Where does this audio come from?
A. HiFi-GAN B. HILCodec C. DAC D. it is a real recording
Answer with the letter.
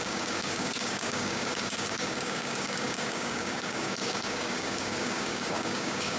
C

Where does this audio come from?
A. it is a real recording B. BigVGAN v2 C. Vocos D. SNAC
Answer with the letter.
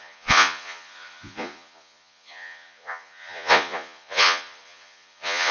C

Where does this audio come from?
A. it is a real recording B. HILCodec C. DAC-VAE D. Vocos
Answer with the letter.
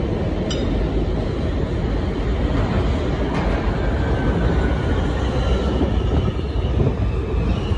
A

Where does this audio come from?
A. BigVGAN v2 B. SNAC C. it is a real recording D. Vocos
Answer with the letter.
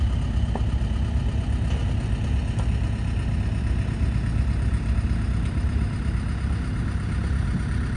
C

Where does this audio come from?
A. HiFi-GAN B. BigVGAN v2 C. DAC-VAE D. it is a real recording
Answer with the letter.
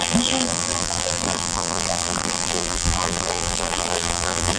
B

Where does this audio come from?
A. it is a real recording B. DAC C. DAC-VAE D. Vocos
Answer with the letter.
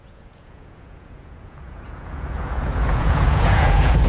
D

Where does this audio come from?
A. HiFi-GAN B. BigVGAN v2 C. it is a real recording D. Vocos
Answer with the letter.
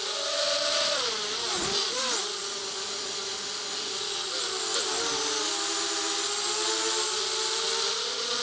C